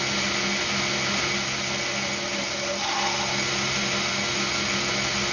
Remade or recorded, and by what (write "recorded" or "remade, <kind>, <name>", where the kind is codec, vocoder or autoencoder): recorded